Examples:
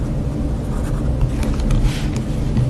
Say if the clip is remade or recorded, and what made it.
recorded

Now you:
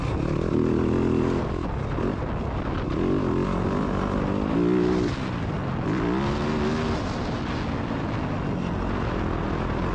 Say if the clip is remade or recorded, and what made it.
recorded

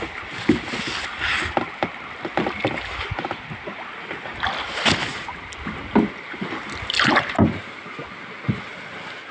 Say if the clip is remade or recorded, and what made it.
recorded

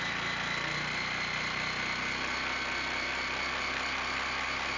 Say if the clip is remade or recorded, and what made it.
recorded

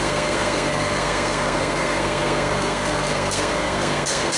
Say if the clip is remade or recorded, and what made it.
remade, codec, SNAC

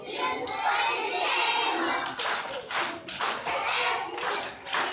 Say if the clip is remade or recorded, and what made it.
recorded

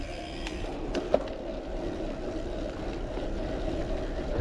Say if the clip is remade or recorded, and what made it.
recorded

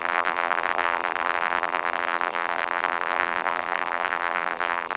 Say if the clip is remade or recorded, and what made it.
remade, vocoder, BigVGAN v2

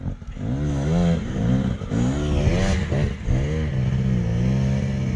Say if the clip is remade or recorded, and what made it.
recorded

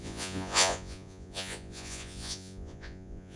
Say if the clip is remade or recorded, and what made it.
remade, vocoder, Vocos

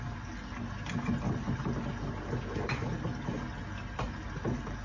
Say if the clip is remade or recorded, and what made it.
recorded